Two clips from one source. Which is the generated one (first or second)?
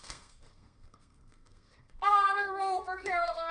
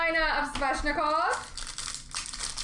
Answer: first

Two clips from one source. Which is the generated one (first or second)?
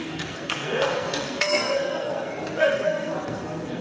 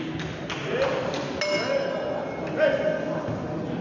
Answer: first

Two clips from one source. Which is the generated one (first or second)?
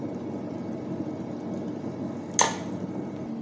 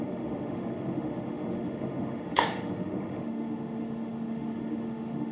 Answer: second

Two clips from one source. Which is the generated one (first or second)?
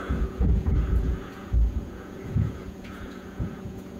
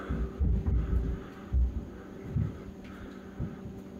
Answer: first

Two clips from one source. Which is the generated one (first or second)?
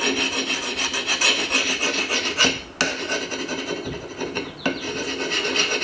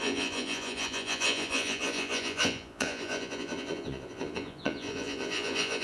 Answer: second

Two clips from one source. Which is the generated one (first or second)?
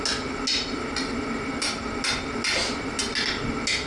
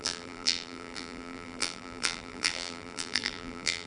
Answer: second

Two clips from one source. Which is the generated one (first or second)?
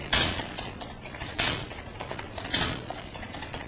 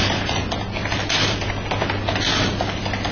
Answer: first